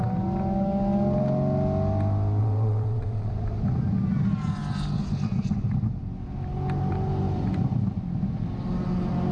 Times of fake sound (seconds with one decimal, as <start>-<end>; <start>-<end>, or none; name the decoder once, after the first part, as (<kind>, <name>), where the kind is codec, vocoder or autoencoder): 2.4-3.3 (vocoder, WaveNeXt)